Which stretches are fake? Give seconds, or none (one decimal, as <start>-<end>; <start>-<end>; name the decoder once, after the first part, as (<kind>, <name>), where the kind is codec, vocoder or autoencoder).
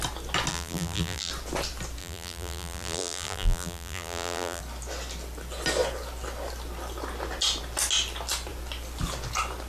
0.5-1.3 (vocoder, BigVGAN v2); 2.0-4.6